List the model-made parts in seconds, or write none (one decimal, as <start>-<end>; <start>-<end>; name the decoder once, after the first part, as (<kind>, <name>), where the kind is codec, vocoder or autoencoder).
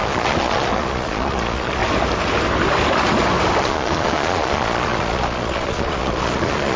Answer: 0.0-1.8 (vocoder, Vocos); 3.6-6.8